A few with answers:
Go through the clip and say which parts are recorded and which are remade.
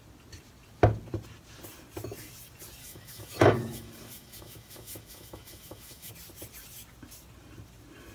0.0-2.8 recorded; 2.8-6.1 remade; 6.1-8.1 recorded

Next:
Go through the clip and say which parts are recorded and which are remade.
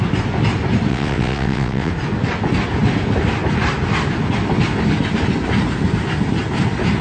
0.0-0.9 recorded; 0.9-1.9 remade; 1.9-7.0 recorded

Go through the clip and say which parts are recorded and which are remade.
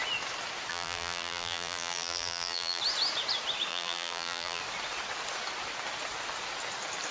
0.0-0.7 recorded; 0.7-2.8 remade; 2.8-3.7 recorded; 3.7-4.6 remade; 4.6-7.1 recorded